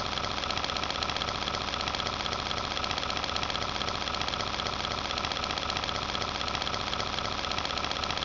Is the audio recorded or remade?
recorded